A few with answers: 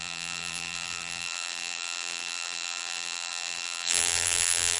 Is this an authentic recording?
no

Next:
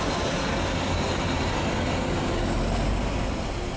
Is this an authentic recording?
yes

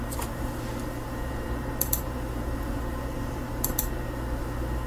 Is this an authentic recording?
no